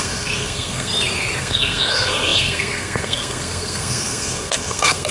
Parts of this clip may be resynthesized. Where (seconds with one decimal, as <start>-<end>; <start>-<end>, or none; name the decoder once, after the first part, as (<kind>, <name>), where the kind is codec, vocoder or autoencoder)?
0.0-0.9 (codec, SNAC); 1.4-5.1